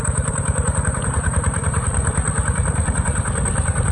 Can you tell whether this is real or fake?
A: fake